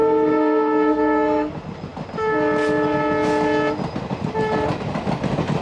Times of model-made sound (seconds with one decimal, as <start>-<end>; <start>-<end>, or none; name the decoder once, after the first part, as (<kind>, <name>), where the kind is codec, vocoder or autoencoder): 0.0-1.5 (codec, SNAC)